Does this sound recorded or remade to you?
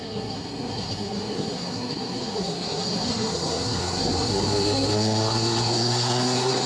remade